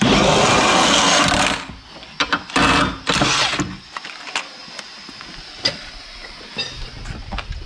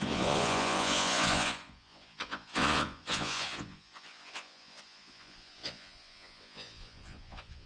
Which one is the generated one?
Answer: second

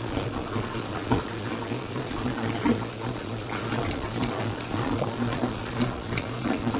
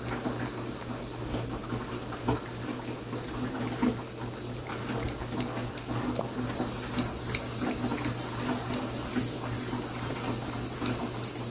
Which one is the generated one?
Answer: first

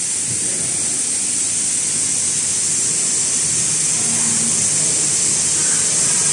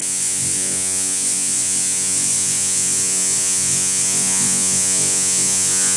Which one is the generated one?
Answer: second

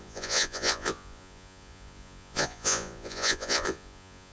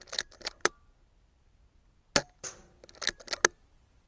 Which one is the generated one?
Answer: first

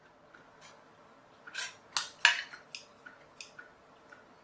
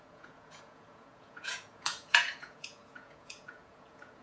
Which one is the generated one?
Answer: second